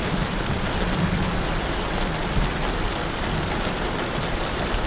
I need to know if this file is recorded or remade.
recorded